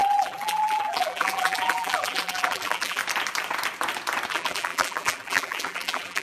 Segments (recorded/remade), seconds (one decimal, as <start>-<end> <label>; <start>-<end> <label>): 0.0-3.0 remade; 3.0-4.3 recorded; 4.3-6.2 remade